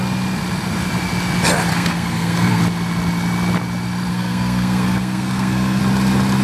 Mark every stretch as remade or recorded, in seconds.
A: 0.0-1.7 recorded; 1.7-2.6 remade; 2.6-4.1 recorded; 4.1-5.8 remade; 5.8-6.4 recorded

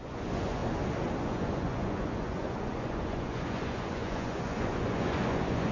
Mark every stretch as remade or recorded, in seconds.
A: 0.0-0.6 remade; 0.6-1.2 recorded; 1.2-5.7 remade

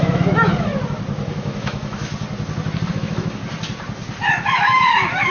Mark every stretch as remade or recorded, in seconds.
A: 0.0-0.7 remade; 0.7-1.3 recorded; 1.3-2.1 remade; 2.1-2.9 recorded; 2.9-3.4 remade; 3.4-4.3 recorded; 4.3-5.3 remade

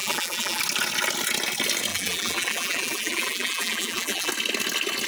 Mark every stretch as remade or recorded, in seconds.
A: 0.0-0.6 remade; 0.6-1.9 recorded; 1.9-4.3 remade; 4.3-5.1 recorded

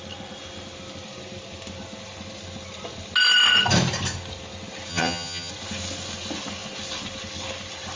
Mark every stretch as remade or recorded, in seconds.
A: 0.0-4.9 recorded; 4.9-5.5 remade; 5.5-8.0 recorded